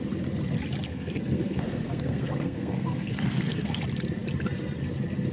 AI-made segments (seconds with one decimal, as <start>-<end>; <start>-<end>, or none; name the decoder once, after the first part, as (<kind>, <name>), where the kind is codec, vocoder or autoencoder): 0.9-3.8 (codec, SNAC)